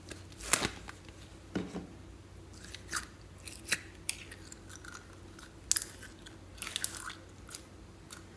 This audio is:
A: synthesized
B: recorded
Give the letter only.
B